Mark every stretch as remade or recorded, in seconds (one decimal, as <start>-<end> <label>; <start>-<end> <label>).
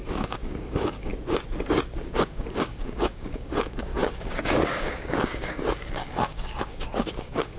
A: 0.0-1.1 remade; 1.1-2.0 recorded; 2.0-7.6 remade